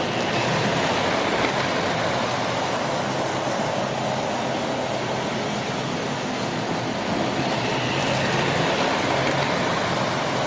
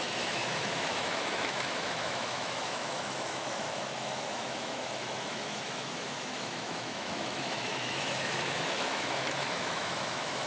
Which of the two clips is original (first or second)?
first